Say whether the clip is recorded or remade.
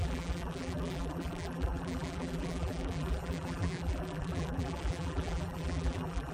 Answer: remade